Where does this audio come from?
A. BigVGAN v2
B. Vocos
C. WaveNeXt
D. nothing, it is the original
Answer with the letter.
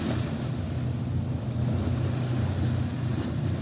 D